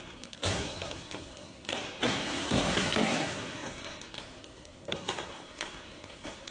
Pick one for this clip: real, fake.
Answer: fake